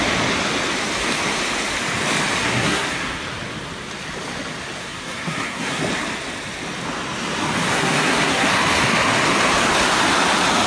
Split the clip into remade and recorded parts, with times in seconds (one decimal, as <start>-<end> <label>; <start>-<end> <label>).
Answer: 0.0-2.4 recorded; 2.4-3.2 remade; 3.2-4.8 recorded; 4.8-5.8 remade; 5.8-7.7 recorded; 7.7-8.5 remade; 8.5-10.7 recorded